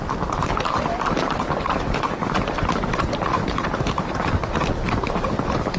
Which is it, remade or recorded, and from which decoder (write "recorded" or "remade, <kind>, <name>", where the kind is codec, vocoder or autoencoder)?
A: recorded